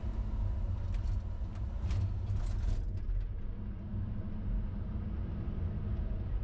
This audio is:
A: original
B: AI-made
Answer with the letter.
A